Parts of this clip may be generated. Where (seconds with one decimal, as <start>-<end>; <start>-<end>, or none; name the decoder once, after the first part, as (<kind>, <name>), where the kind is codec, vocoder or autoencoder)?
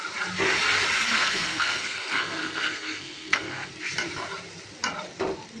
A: 1.1-3.7 (codec, SNAC)